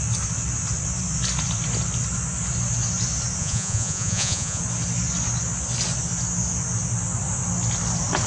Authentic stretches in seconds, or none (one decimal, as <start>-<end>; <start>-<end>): 0.0-3.4; 4.6-8.3

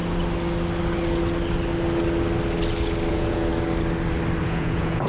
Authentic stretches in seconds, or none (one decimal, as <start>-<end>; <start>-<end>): 0.0-3.1; 3.5-4.4